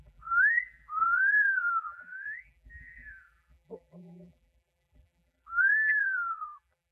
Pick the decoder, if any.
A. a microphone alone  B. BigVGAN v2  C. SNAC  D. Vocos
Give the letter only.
B